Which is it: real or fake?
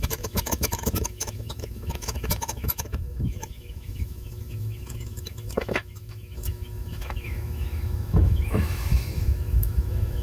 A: fake